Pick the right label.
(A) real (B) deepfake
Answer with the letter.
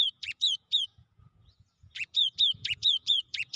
B